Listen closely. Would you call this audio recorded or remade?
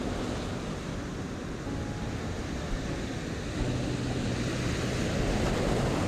recorded